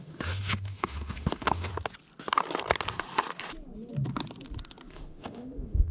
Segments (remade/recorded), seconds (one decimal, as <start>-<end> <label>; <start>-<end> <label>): 0.0-1.7 remade; 1.7-4.9 recorded; 4.9-5.9 remade